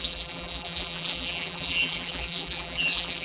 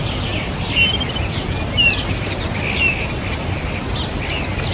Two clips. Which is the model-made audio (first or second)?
first